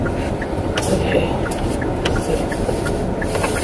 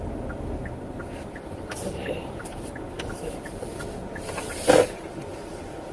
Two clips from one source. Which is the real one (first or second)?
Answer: first